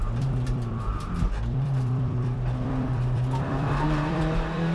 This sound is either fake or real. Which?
fake